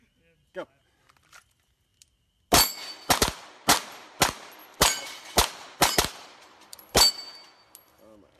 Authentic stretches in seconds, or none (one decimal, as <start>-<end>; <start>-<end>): 0.0-4.6; 7.1-8.4